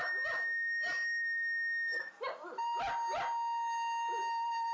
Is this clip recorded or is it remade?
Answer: recorded